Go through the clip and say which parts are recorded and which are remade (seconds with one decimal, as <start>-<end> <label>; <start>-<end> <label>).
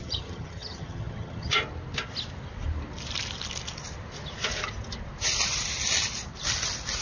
0.0-1.5 remade; 1.5-7.0 recorded